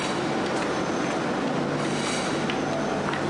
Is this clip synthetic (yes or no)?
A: no